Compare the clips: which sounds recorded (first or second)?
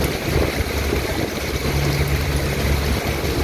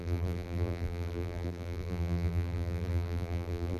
first